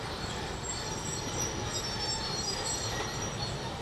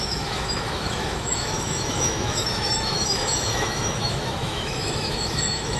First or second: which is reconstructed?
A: second